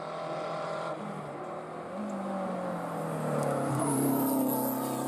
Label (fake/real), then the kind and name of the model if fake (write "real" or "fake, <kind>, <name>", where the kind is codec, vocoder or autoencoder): real